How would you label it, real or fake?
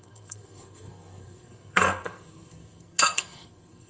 fake